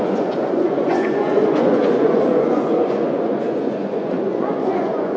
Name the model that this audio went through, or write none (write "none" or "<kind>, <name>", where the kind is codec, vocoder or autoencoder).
vocoder, Vocos